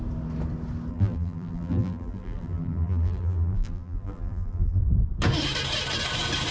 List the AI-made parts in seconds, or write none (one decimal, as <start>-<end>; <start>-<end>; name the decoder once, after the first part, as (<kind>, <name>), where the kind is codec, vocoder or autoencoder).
0.9-4.8 (vocoder, BigVGAN v2)